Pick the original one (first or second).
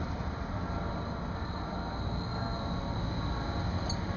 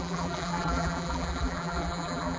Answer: first